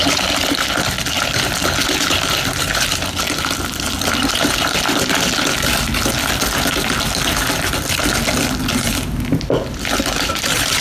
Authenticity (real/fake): real